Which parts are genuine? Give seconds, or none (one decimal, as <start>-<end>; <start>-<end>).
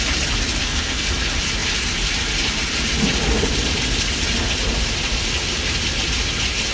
0.0-0.6; 1.1-6.7